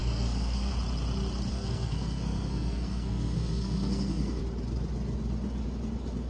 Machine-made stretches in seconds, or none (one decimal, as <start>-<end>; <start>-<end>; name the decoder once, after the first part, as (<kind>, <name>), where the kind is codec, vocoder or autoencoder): 0.0-0.7 (codec, SNAC); 1.5-4.4